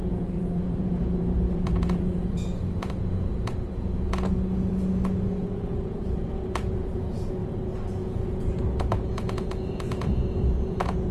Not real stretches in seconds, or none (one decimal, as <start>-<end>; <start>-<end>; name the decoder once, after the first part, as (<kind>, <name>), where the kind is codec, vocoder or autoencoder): 0.0-11.1 (vocoder, Vocos)

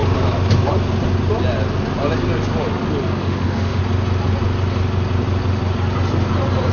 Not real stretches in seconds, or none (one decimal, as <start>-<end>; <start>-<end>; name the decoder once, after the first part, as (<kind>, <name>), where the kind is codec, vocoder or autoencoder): 3.2-3.8 (autoencoder, DAC-VAE)